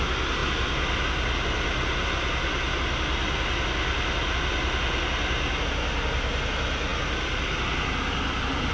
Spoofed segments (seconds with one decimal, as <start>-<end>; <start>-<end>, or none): none